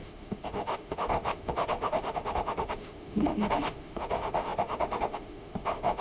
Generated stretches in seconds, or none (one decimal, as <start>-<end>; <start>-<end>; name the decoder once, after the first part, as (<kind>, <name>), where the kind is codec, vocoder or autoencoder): 0.0-6.0 (autoencoder, DAC-VAE)